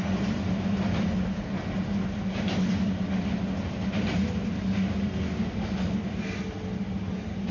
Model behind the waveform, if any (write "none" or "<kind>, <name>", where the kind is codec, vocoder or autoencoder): none